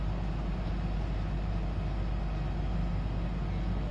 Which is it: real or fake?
real